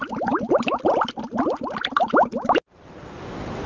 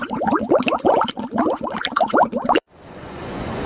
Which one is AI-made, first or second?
second